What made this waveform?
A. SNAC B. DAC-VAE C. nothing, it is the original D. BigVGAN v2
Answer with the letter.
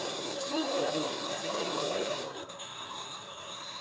A